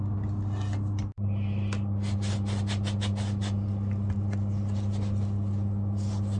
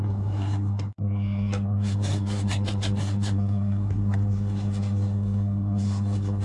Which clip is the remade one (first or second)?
second